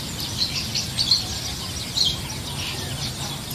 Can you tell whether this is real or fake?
real